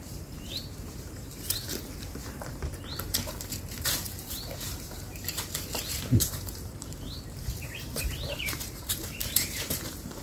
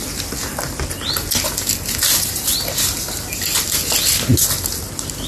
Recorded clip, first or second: second